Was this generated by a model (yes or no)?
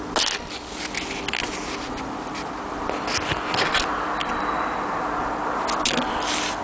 no